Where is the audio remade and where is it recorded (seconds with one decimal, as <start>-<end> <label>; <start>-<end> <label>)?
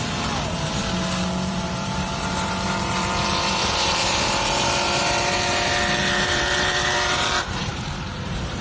0.0-0.8 remade; 0.8-1.5 recorded; 1.5-8.6 remade